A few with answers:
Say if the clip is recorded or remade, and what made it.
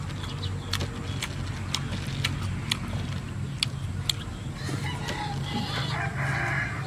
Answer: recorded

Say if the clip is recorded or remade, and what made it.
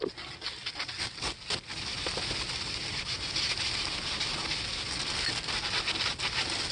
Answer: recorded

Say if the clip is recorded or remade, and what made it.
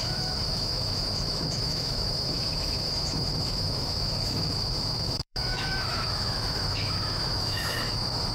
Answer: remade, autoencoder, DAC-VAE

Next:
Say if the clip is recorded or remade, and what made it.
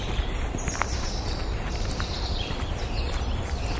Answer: recorded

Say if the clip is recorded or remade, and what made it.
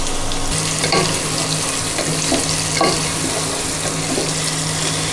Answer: recorded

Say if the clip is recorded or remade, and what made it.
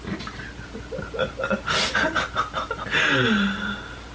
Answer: recorded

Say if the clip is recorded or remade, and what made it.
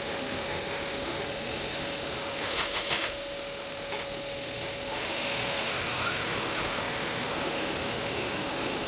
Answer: remade, autoencoder, DAC-VAE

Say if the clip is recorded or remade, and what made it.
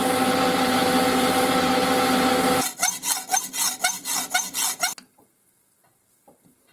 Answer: recorded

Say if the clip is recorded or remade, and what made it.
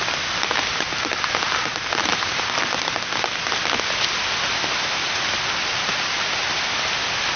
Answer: recorded